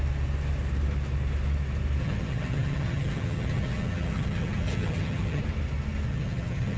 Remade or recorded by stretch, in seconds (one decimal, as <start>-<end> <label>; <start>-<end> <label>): 0.0-2.0 recorded; 2.0-5.4 remade; 5.4-6.1 recorded; 6.1-6.8 remade